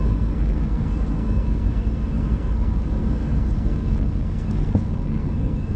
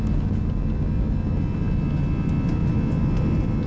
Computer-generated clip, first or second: first